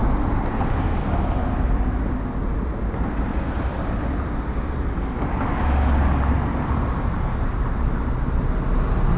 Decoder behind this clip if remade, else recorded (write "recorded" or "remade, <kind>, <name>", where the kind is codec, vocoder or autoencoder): recorded